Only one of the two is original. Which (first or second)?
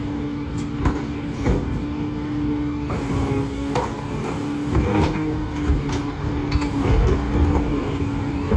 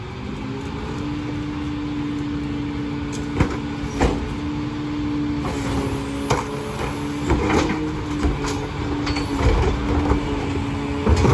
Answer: second